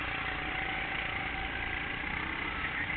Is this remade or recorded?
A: recorded